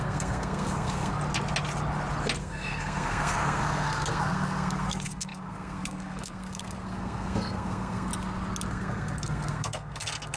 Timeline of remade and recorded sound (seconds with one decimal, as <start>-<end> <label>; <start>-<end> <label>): 0.0-1.1 remade; 1.1-2.4 recorded; 2.4-8.1 remade; 8.1-8.7 recorded; 8.7-10.4 remade